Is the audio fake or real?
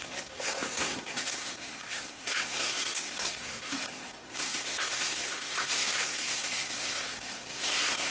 fake